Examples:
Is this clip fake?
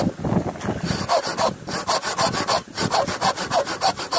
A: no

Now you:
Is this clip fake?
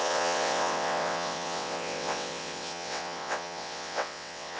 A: yes